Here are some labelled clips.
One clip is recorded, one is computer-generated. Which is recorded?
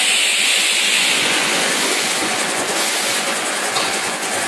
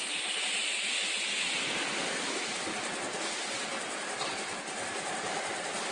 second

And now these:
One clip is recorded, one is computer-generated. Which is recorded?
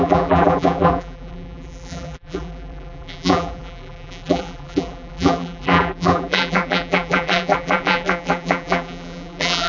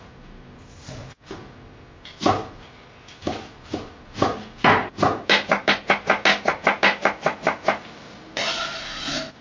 second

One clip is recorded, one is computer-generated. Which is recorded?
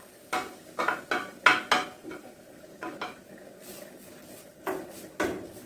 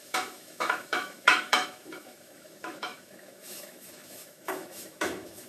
first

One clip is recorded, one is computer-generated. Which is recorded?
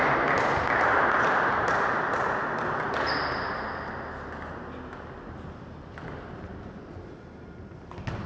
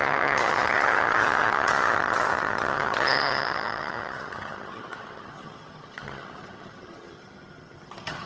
first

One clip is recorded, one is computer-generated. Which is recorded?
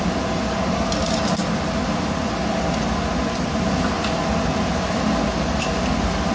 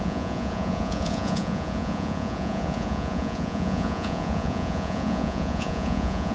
first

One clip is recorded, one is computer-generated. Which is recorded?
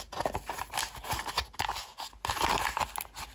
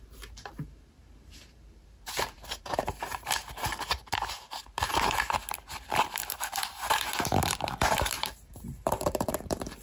first